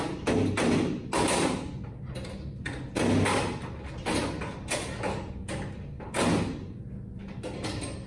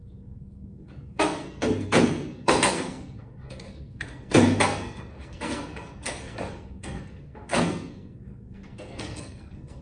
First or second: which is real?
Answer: first